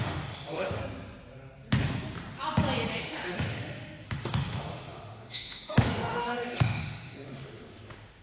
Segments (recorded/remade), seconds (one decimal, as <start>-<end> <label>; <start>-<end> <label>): 0.0-0.8 remade; 0.8-3.0 recorded; 3.0-8.2 remade